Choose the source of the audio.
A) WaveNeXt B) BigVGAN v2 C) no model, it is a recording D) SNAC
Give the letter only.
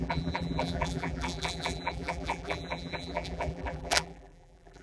B